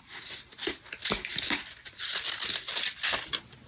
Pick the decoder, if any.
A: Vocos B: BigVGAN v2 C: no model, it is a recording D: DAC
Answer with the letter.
C